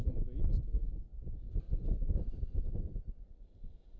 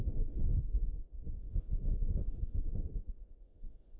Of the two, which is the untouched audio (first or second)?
first